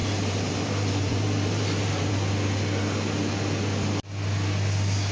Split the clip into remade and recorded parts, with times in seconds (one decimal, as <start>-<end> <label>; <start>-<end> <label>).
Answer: 0.0-2.1 remade; 2.1-5.1 recorded